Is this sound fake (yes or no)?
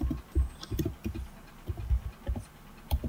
no